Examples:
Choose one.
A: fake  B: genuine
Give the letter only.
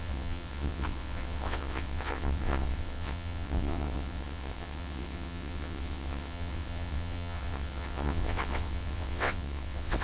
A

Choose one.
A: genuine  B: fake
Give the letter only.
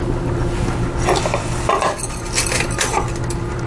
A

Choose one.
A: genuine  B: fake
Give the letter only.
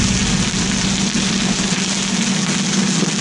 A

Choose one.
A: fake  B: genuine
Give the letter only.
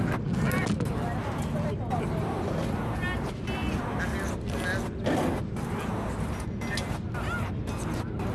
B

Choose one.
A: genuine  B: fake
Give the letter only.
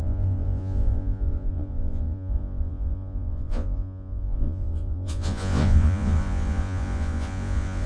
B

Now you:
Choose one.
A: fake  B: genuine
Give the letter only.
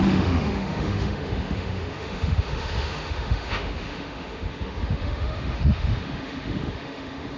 A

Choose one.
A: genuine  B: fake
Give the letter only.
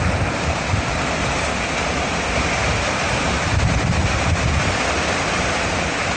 B